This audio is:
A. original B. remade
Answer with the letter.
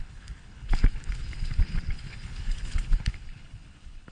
B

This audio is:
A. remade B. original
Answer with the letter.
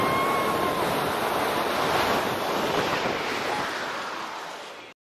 B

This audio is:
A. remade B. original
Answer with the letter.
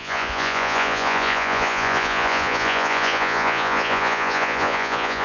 A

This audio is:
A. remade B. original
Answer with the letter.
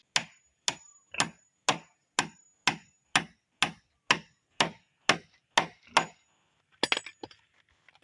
B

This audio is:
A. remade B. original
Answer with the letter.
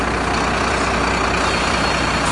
B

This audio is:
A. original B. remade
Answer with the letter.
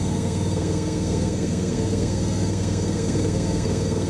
B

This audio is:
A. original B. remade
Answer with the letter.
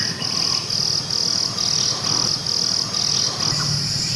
A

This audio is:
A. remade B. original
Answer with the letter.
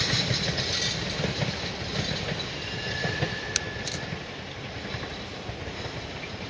B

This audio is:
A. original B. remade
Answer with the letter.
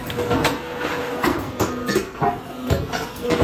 B